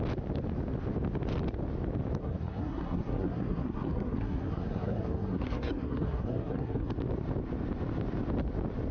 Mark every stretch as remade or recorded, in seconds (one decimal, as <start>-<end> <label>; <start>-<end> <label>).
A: 0.0-2.2 recorded; 2.2-6.9 remade; 6.9-8.9 recorded